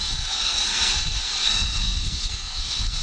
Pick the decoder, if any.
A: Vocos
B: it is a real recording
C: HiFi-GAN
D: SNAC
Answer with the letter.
D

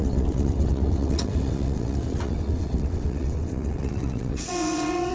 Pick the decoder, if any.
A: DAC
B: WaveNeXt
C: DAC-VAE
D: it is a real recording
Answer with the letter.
B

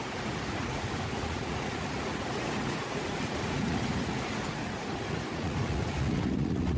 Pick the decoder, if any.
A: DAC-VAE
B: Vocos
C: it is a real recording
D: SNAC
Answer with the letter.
B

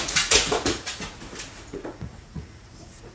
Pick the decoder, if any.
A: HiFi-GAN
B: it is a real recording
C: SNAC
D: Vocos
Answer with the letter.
D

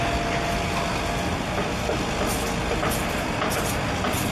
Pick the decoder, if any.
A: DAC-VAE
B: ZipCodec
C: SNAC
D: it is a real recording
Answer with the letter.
D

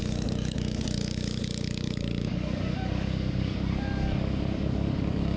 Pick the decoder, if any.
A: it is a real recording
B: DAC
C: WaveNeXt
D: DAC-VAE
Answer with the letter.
B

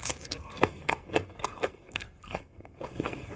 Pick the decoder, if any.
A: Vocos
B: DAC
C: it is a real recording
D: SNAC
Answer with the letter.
D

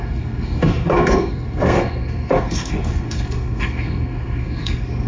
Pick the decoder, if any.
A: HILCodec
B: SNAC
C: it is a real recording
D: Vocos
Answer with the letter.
B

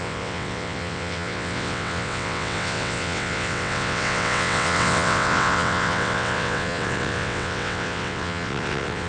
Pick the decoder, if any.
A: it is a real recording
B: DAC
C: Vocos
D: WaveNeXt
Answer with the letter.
D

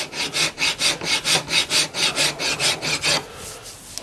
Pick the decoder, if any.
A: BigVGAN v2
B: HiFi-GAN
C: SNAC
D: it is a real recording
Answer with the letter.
D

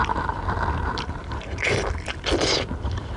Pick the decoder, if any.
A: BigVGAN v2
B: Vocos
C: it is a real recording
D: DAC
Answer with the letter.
A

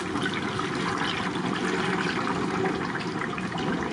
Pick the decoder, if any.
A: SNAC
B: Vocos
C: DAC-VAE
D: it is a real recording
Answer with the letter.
D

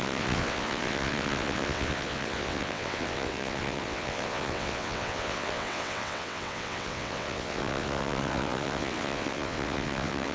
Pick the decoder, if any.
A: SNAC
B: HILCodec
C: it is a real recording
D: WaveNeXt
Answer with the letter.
D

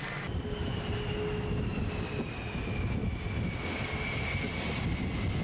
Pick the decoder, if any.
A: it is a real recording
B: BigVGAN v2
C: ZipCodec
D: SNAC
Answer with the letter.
A